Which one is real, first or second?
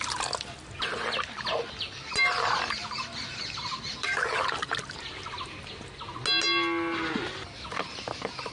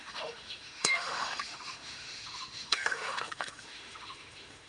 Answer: first